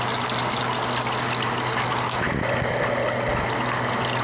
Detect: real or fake real